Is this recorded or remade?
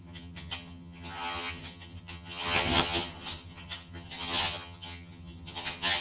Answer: remade